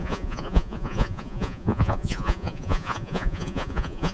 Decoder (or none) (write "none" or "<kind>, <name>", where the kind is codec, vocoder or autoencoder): vocoder, Vocos